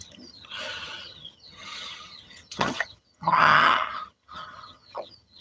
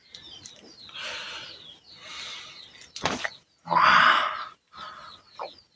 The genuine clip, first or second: second